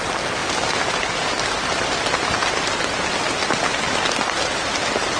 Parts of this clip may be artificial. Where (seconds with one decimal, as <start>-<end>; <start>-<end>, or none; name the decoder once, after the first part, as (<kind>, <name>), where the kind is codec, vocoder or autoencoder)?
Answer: none